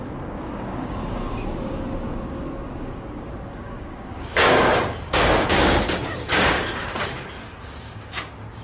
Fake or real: fake